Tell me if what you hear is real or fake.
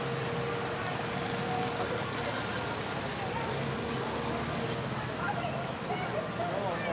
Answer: real